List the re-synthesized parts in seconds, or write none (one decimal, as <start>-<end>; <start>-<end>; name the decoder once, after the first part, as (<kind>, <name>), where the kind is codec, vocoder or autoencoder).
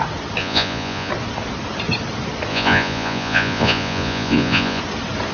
0.4-1.1 (vocoder, Vocos); 2.5-4.8